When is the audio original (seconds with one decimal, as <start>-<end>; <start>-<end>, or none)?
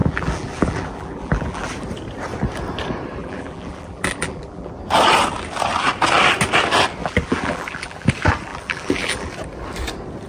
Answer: 1.7-3.2; 4.7-7.0; 8.1-8.5; 9.3-10.3